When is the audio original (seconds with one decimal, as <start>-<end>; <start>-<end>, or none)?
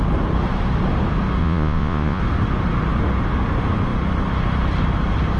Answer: 0.0-1.4; 2.2-5.4